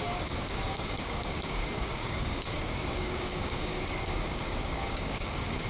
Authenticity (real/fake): fake